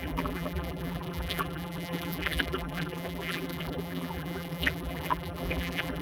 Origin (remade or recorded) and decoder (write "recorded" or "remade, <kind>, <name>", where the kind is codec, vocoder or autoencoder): remade, vocoder, BigVGAN v2